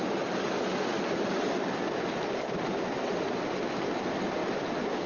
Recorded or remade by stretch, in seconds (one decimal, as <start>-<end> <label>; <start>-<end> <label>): 0.0-5.1 recorded